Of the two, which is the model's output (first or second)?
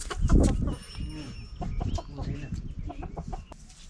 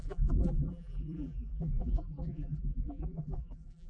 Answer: second